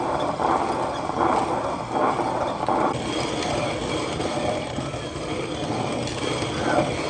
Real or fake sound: real